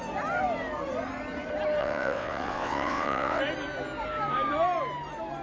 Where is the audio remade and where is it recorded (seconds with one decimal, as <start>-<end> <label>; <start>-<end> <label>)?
0.0-1.8 recorded; 1.8-3.4 remade; 3.4-5.4 recorded